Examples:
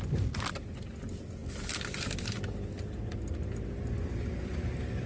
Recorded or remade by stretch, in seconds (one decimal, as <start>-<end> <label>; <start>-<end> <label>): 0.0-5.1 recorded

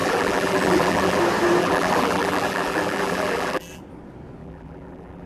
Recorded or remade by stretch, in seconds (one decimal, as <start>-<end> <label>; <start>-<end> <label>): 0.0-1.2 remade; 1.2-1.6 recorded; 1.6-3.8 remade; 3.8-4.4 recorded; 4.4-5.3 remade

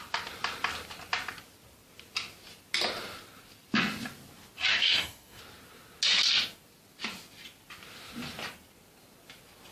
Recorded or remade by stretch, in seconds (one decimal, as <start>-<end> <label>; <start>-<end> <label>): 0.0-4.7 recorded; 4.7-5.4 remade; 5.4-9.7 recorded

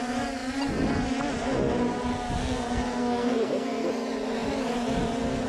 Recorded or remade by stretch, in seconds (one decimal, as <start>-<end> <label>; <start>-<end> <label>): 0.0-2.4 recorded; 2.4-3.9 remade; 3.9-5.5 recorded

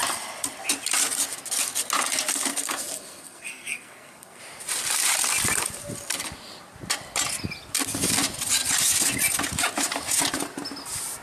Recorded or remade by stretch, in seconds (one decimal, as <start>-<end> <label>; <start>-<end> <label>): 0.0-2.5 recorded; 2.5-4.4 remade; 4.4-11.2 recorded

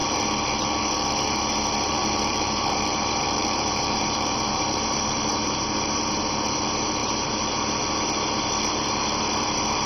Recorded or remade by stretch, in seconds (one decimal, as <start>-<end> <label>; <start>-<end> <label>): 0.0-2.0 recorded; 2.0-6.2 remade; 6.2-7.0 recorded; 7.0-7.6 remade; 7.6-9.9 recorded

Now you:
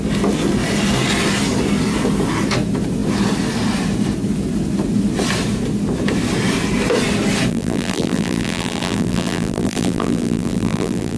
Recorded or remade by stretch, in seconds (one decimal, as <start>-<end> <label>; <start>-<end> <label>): 0.0-7.5 recorded; 7.5-11.2 remade